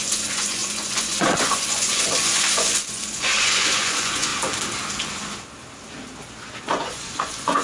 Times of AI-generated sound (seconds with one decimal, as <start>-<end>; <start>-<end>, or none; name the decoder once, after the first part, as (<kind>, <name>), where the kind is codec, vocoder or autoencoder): 0.0-4.3 (vocoder, Vocos); 6.6-7.6